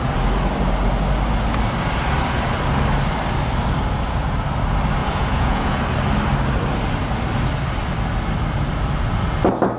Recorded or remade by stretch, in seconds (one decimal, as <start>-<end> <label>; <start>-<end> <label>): 0.0-5.0 recorded; 5.0-5.8 remade; 5.8-9.8 recorded

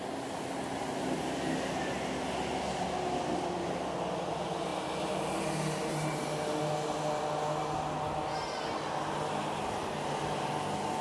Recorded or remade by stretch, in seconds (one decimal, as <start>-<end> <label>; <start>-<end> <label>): 0.0-11.0 recorded